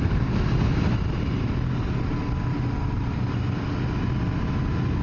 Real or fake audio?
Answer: real